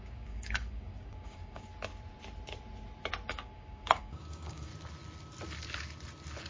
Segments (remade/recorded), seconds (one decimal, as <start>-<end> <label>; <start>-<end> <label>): 0.0-1.7 remade; 1.7-3.3 recorded; 3.3-4.7 remade; 4.7-6.5 recorded

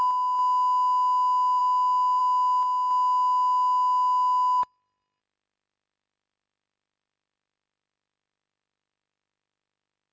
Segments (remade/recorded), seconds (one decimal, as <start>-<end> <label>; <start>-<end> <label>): 0.0-4.6 recorded; 4.6-5.2 remade; 5.2-10.1 recorded